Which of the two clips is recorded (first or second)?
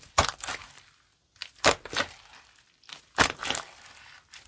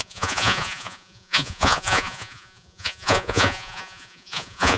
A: first